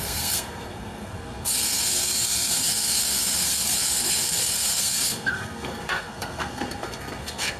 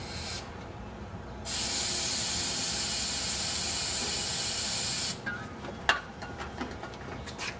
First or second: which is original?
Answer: second